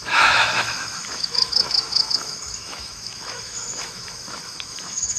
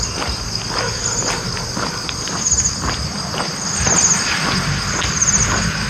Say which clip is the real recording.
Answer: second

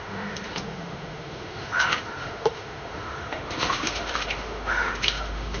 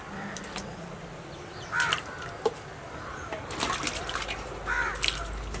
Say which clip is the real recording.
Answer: second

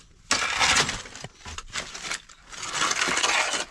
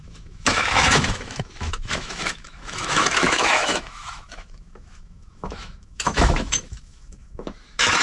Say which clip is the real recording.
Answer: first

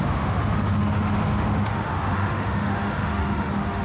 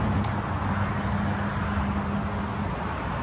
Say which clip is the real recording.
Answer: second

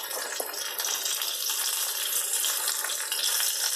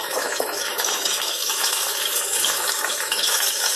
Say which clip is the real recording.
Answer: first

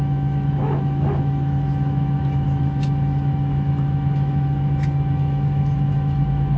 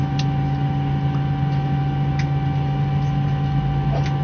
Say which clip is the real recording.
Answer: second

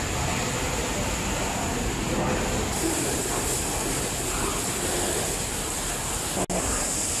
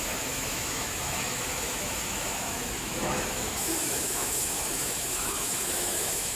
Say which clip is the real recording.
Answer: first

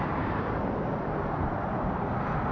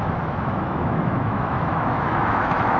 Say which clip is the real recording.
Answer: first